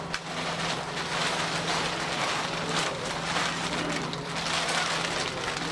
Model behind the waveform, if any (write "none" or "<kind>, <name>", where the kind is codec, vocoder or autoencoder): none